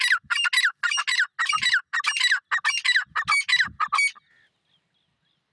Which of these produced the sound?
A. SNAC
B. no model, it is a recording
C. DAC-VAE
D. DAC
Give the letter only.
B